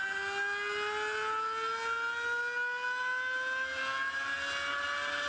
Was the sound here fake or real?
real